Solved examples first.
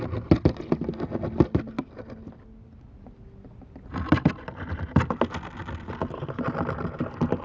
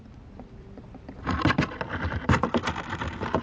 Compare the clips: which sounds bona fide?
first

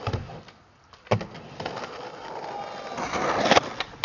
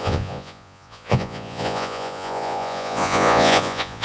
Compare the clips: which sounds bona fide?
first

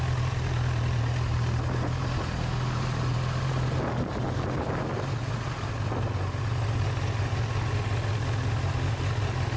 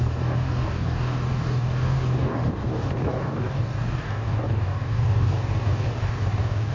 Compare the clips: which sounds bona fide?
first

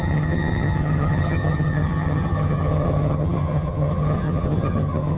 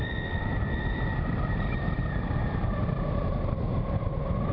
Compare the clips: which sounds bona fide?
second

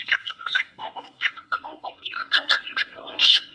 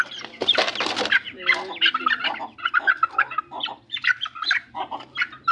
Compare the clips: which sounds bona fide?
second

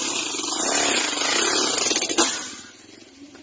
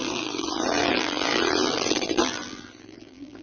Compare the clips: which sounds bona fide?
first